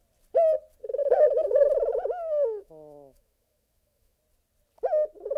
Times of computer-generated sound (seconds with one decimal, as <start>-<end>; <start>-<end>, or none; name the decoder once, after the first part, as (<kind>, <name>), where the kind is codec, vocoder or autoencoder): 1.0-4.2 (autoencoder, DAC-VAE)